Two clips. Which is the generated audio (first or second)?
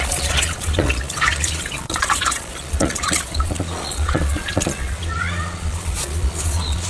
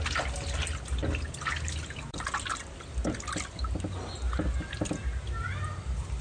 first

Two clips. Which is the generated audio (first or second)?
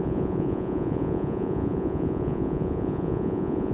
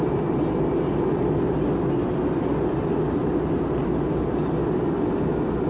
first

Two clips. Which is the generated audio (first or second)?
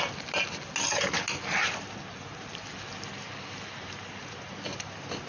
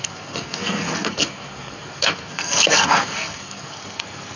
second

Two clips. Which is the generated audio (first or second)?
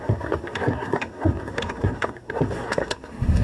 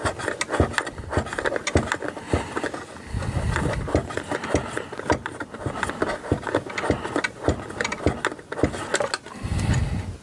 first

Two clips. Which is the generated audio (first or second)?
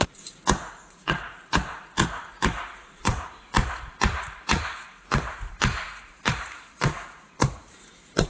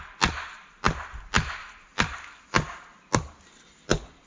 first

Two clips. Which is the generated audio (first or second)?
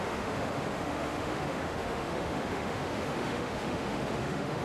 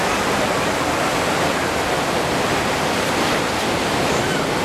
first